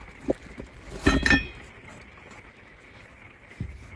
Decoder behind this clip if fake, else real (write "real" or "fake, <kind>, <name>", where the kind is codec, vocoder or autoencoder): real